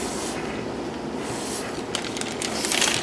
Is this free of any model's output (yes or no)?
yes